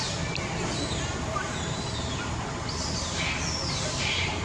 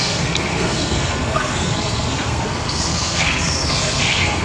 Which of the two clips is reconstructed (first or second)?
second